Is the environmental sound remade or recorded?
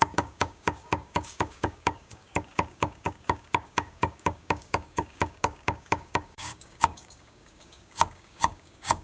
remade